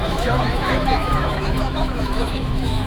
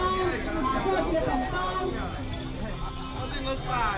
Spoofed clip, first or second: first